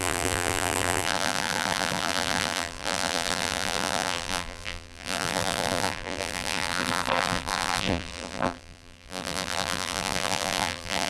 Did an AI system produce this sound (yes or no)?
yes